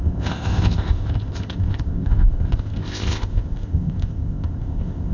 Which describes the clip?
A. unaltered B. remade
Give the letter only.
B